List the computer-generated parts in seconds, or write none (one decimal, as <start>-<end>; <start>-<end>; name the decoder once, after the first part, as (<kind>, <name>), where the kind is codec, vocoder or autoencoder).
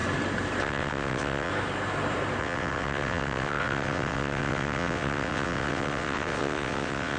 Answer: 0.6-1.5 (vocoder, WaveNeXt); 2.4-7.2